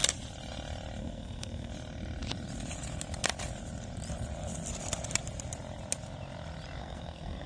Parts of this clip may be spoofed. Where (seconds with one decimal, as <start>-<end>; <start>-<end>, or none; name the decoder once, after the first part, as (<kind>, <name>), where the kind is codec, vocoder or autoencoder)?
1.0-1.7 (codec, SNAC); 6.8-7.5

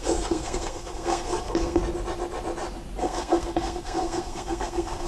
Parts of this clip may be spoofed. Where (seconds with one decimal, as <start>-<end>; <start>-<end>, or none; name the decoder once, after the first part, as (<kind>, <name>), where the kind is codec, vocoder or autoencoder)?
0.0-1.8 (codec, SNAC); 3.0-5.1

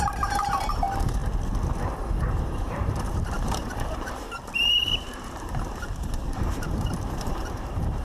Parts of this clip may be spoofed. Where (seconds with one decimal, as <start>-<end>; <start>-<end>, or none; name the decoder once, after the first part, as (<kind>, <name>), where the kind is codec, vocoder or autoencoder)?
0.0-1.2 (vocoder, BigVGAN v2); 2.3-8.0

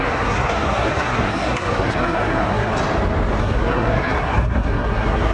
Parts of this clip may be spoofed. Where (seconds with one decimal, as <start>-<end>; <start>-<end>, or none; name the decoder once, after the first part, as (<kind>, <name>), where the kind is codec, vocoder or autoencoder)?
0.0-2.7 (codec, SNAC); 3.4-5.3

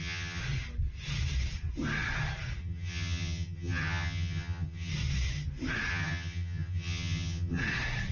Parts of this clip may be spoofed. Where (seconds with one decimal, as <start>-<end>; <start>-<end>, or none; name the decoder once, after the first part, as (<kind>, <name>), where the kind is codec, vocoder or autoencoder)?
0.0-0.4 (vocoder, HiFi-GAN); 2.6-4.9; 5.9-7.6

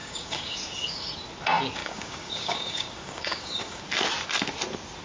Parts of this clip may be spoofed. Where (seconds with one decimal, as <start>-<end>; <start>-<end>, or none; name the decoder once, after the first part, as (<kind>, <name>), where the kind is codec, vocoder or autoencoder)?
0.0-1.1 (codec, DAC); 1.8-3.8